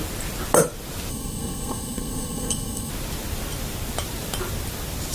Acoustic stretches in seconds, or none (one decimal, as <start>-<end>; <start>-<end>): 0.0-1.1; 2.9-5.1